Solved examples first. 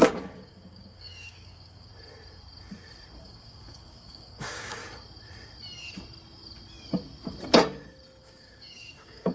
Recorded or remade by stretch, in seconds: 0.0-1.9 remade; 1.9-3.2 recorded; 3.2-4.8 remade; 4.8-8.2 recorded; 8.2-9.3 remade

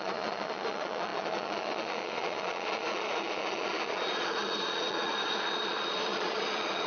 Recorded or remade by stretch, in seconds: 0.0-6.9 remade

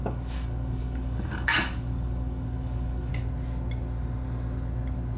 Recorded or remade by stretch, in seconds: 0.0-3.1 remade; 3.1-5.2 recorded

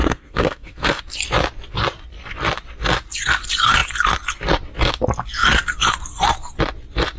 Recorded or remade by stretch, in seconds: 0.0-1.0 remade; 1.0-7.2 recorded

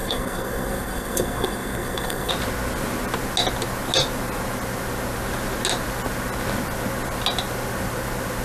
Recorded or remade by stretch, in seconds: 0.0-2.3 remade; 2.3-8.4 recorded

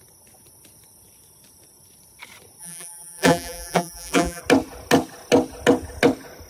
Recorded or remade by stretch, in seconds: 0.0-2.6 recorded; 2.6-4.4 remade; 4.4-6.5 recorded

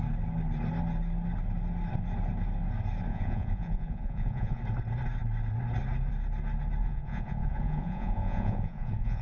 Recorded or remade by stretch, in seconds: 0.0-3.1 recorded; 3.1-4.6 remade; 4.6-6.8 recorded; 6.8-9.2 remade

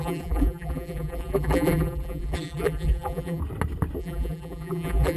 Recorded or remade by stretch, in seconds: 0.0-3.4 remade; 3.4-4.0 recorded; 4.0-5.2 remade